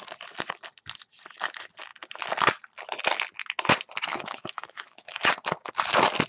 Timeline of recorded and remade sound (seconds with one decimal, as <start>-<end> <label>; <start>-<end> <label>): 0.0-4.1 recorded; 4.1-5.3 remade; 5.3-6.3 recorded